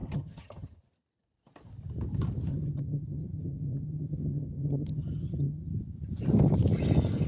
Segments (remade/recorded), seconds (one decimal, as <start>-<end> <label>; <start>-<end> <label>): 0.0-0.8 remade; 0.8-2.5 recorded; 2.5-5.7 remade; 5.7-7.3 recorded